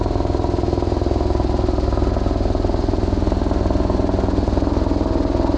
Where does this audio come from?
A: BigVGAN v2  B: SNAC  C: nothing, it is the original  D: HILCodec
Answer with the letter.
C